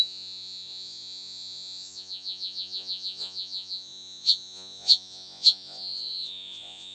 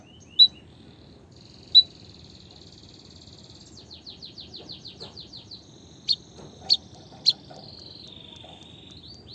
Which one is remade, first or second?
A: first